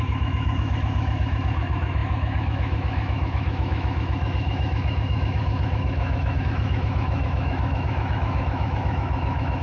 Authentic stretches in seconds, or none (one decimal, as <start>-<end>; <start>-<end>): none